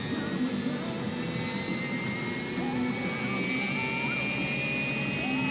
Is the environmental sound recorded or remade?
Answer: recorded